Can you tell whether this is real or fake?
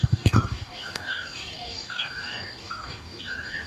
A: fake